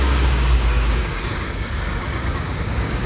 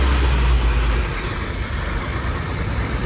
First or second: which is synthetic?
first